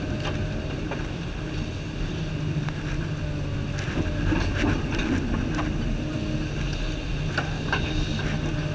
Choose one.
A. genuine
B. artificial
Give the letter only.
A